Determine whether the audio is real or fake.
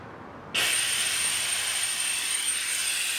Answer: real